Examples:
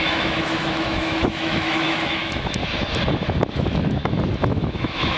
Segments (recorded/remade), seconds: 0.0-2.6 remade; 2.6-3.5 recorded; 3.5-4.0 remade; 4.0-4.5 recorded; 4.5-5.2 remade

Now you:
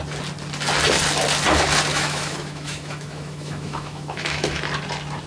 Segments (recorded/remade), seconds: 0.0-1.9 recorded; 1.9-4.6 remade; 4.6-5.3 recorded

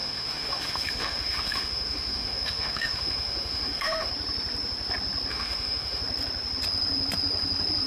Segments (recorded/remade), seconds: 0.0-4.1 remade; 4.1-5.3 recorded; 5.3-6.0 remade; 6.0-7.9 recorded

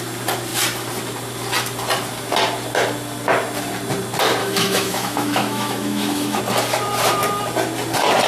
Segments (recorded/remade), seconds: 0.0-4.4 recorded; 4.4-6.4 remade; 6.4-8.3 recorded

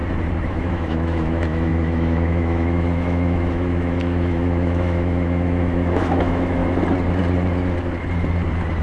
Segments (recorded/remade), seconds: 0.0-0.5 recorded; 0.5-6.6 remade; 6.6-8.8 recorded